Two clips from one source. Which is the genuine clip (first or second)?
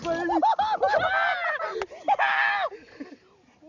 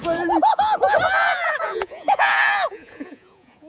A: first